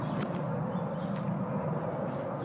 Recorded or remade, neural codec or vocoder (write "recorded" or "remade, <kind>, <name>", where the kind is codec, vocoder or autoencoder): recorded